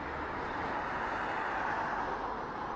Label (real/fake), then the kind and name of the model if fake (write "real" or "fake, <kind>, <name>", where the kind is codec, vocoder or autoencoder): real